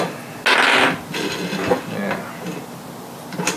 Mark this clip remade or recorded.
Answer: recorded